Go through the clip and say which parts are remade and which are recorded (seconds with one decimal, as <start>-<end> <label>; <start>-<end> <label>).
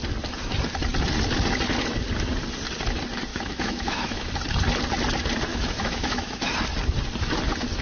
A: 0.0-3.3 recorded; 3.3-4.3 remade; 4.3-5.5 recorded; 5.5-6.5 remade; 6.5-7.8 recorded